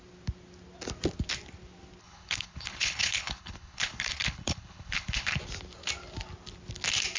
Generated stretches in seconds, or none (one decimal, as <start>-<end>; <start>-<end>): 2.0-5.4